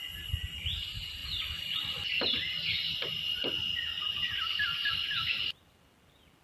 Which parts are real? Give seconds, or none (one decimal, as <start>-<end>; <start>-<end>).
0.0-6.4